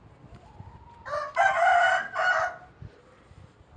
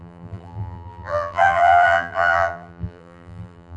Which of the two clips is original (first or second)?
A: first